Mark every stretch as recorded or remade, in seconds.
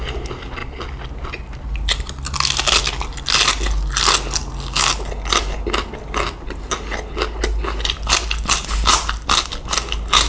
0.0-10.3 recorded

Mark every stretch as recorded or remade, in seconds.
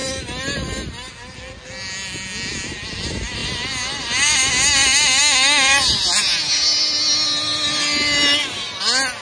0.0-9.2 recorded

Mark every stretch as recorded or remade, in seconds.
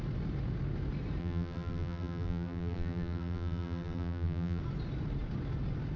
0.0-1.2 recorded; 1.2-4.6 remade; 4.6-6.0 recorded